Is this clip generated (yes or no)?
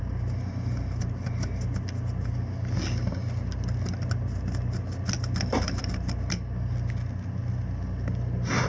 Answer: no